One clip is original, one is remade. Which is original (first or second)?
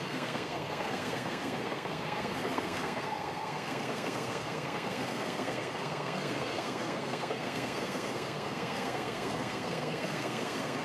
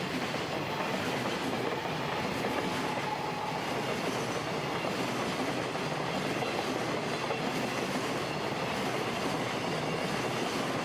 second